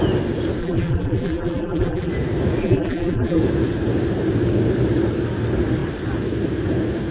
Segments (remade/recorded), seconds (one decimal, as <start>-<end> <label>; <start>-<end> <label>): 0.0-0.6 recorded; 0.6-2.1 remade; 2.1-2.6 recorded; 2.6-3.4 remade; 3.4-7.1 recorded